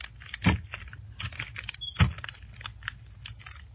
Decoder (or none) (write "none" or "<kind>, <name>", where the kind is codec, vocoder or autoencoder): none